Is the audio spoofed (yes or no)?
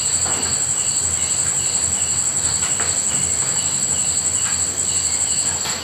no